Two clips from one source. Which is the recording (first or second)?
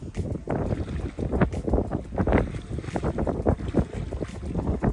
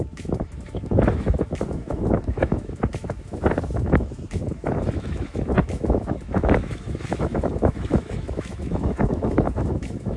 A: first